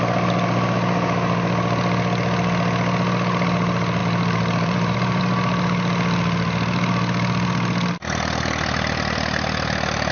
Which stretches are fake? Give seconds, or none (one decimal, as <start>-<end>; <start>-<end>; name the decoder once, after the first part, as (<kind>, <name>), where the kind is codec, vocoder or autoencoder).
4.0-5.2 (vocoder, BigVGAN v2)